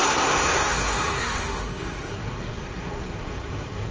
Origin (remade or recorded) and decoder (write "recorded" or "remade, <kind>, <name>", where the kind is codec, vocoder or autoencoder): remade, codec, SNAC